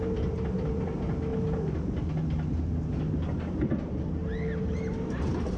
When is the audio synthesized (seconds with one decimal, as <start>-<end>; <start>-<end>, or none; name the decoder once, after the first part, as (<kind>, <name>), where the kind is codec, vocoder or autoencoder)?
none